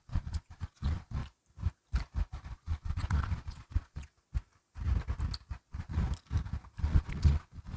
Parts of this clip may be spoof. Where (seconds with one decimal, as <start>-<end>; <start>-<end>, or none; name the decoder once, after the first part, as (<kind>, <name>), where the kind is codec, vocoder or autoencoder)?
0.0-1.2 (vocoder, Vocos); 2.5-4.1; 5.5-6.0; 6.8-7.8